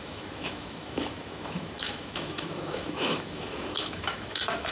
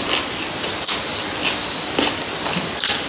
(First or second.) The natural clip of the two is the second